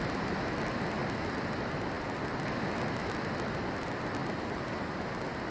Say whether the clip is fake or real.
real